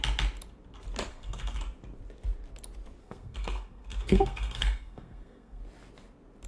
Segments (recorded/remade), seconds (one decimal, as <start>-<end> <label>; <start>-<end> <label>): 0.0-1.1 recorded; 1.1-1.6 remade; 1.6-3.0 recorded; 3.0-5.6 remade; 5.6-6.5 recorded